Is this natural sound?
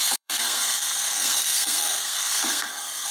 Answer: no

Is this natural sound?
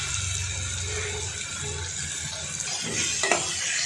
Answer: yes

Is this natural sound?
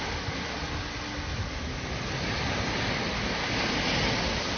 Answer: yes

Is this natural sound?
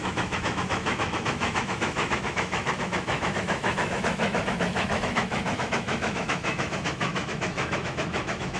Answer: no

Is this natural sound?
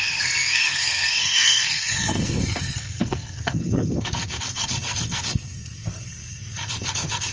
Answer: no